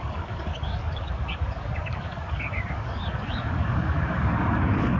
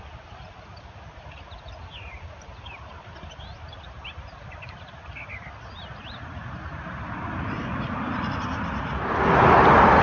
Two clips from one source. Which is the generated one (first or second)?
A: first